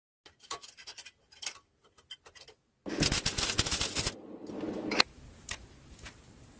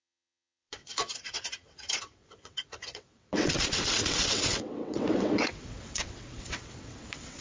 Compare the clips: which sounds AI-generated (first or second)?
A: second